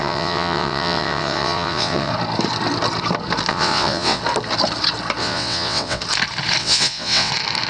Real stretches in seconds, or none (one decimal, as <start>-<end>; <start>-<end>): 2.1-3.5; 4.2-5.2; 6.0-6.6; 7.3-7.7